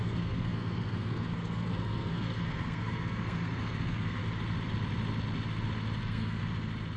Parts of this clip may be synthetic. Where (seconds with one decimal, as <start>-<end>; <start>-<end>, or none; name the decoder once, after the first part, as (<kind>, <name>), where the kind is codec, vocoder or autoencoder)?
0.0-4.2 (codec, SNAC); 6.0-6.4